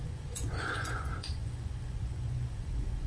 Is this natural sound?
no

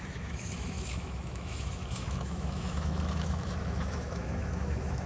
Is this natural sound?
no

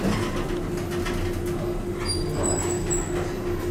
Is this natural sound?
yes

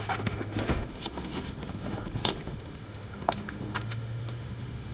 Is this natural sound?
no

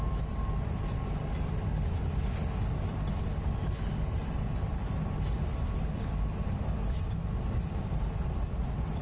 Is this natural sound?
yes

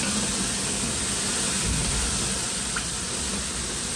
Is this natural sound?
yes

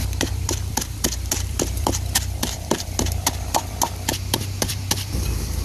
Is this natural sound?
no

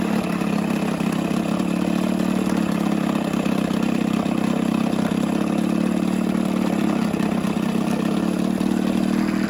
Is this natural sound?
yes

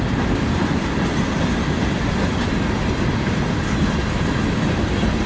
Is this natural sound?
yes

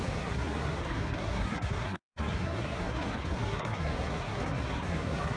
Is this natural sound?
no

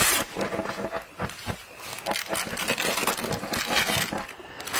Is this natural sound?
yes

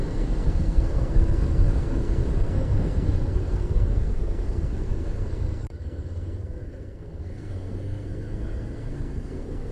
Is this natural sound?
no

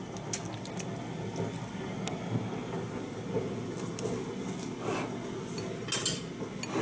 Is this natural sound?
yes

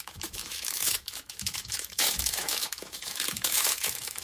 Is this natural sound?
no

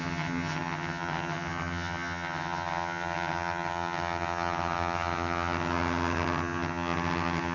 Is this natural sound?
no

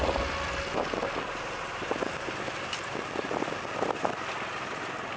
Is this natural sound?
yes